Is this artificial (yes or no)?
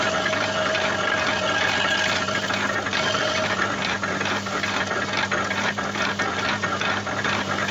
no